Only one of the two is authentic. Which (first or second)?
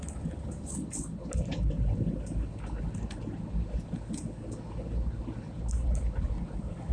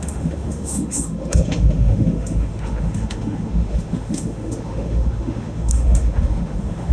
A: first